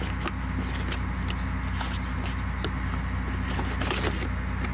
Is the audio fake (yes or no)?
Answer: no